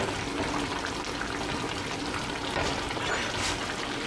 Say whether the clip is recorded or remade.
recorded